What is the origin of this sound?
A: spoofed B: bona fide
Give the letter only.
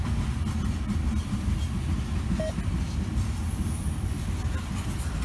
B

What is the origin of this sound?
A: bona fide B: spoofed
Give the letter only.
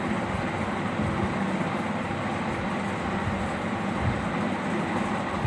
A